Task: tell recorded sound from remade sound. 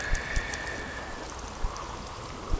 recorded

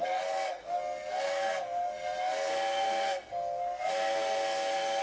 remade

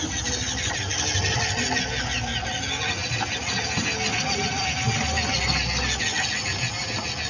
recorded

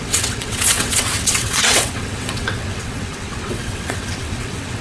remade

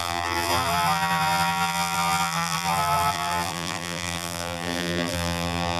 remade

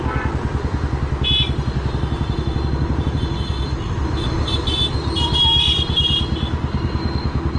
recorded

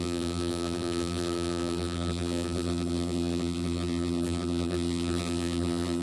remade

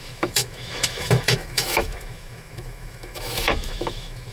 remade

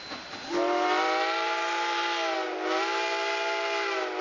recorded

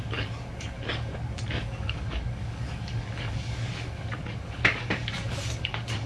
remade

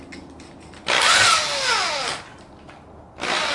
recorded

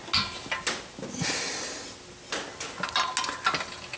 recorded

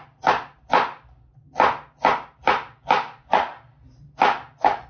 recorded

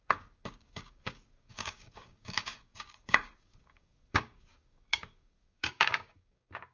remade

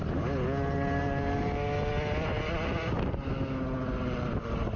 recorded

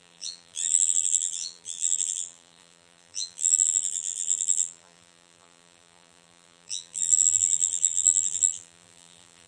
remade